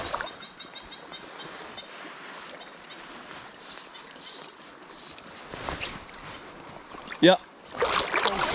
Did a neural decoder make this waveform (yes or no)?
no